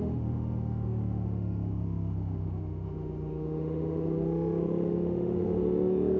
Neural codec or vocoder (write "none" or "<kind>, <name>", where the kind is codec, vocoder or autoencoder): autoencoder, DAC-VAE